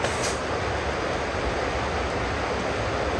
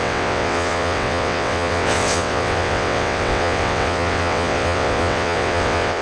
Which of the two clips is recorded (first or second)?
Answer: first